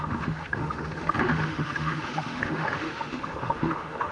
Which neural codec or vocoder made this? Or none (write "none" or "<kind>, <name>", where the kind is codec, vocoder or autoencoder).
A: autoencoder, DAC-VAE